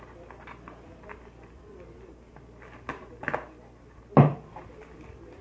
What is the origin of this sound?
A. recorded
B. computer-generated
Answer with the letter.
A